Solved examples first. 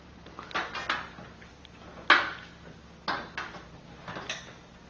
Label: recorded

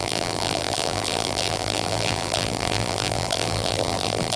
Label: remade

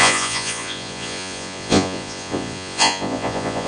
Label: remade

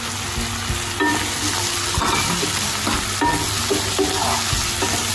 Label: recorded